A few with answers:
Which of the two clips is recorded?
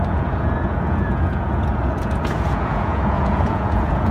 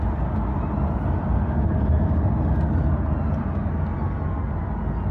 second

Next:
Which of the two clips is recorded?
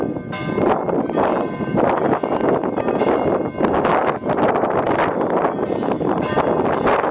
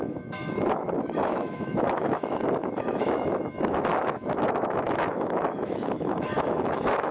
first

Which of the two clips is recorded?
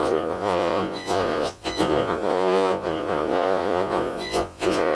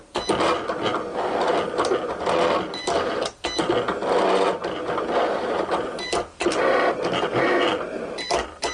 second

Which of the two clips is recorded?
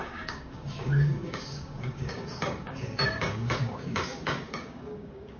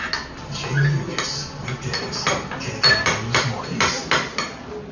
second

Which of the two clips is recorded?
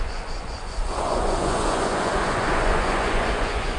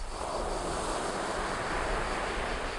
second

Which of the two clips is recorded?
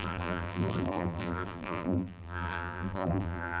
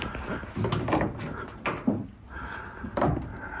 second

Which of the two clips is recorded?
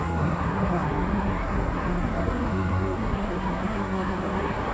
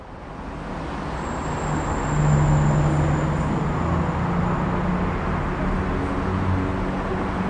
second